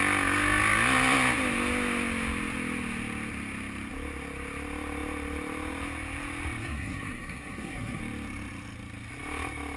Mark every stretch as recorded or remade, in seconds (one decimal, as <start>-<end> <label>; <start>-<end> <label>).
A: 0.0-6.6 recorded; 6.6-8.0 remade; 8.0-9.8 recorded